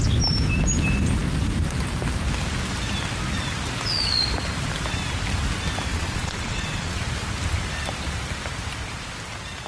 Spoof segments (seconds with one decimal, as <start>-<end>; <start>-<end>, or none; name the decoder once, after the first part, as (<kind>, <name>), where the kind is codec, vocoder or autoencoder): 5.9-7.0 (vocoder, Vocos)